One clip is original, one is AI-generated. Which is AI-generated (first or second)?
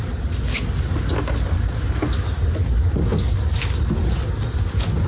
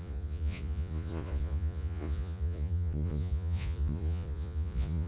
second